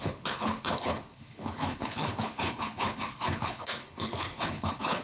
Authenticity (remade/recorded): remade